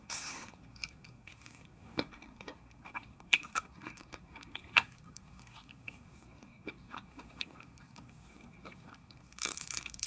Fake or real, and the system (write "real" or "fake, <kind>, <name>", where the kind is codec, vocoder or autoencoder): fake, codec, SNAC